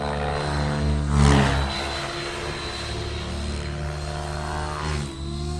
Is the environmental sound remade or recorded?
recorded